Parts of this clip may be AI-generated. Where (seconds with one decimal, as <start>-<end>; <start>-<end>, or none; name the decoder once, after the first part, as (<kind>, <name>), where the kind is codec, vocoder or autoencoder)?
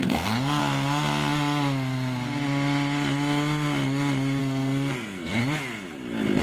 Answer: 0.0-0.6 (codec, SNAC); 4.4-5.4